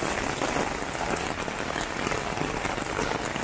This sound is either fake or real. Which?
real